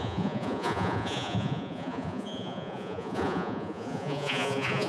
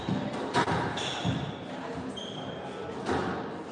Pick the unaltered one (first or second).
second